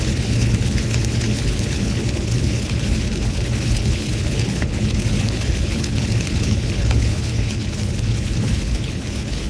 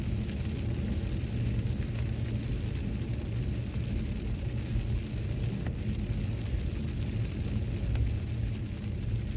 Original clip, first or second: second